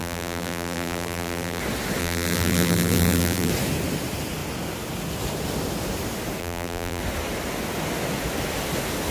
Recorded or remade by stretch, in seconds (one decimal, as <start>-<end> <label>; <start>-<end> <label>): 0.0-1.6 remade; 1.6-2.0 recorded; 2.0-3.5 remade; 3.5-6.4 recorded; 6.4-7.0 remade; 7.0-9.1 recorded